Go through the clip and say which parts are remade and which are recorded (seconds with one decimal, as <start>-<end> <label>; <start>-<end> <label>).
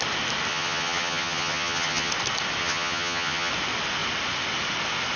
0.0-0.5 recorded; 0.5-2.1 remade; 2.1-2.6 recorded; 2.6-3.5 remade; 3.5-5.2 recorded